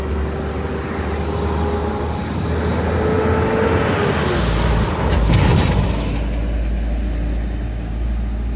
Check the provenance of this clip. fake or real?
real